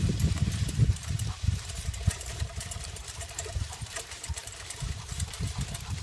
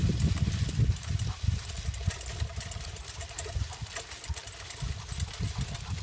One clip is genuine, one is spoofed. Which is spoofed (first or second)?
first